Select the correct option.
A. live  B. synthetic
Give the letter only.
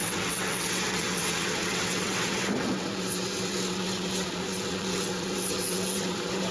B